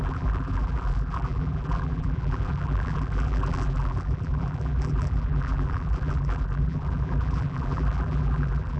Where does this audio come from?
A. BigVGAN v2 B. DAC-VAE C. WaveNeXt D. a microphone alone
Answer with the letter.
A